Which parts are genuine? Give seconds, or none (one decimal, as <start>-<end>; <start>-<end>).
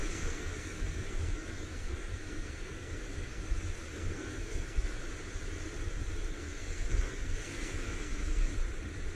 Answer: 5.0-6.3; 8.5-9.2